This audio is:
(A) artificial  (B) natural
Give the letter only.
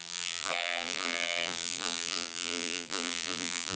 A